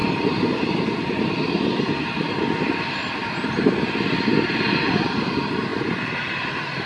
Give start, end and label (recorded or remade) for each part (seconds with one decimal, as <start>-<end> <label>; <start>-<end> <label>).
0.0-1.9 remade; 1.9-3.2 recorded; 3.2-5.2 remade; 5.2-5.7 recorded; 5.7-6.9 remade